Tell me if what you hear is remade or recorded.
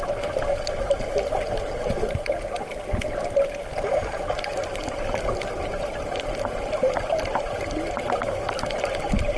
recorded